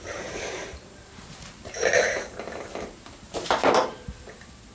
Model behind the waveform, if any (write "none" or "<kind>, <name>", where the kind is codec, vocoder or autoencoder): vocoder, BigVGAN v2